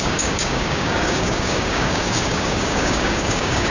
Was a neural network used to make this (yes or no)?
yes